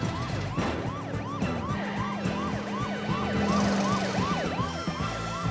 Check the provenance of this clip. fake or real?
real